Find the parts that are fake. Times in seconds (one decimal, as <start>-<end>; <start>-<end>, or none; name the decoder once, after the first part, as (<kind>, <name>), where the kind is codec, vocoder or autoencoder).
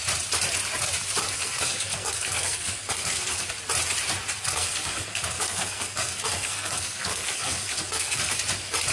1.2-3.5 (codec, SNAC); 4.5-8.3